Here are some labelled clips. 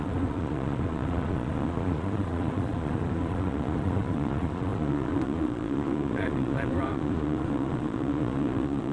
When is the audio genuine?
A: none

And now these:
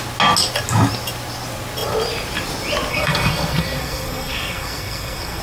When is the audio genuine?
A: 0.0-2.9

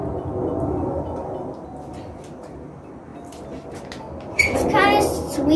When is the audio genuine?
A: 0.0-5.6

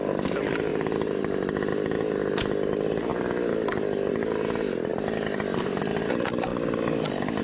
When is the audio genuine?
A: 0.0-4.9; 5.8-6.5